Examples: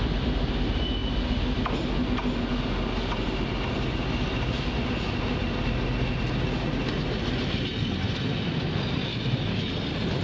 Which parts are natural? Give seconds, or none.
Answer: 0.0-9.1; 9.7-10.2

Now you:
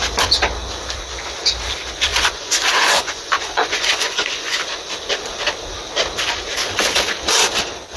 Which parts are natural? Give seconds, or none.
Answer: 0.0-2.1; 4.6-8.0

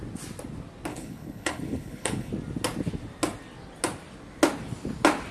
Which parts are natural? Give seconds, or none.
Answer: 0.0-0.9; 2.3-5.3

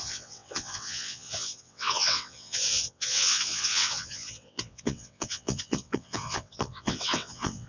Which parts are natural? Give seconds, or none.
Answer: none

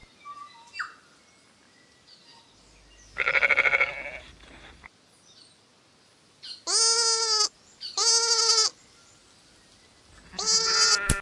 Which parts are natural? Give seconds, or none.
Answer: 0.0-11.2

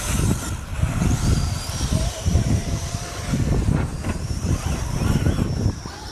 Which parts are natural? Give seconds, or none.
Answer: 0.0-0.7; 2.9-3.9; 5.0-6.1

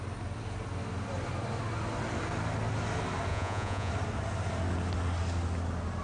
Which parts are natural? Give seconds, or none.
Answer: 0.0-3.3; 3.9-6.0

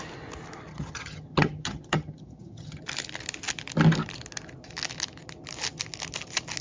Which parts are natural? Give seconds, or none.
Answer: 0.0-0.7; 2.8-6.6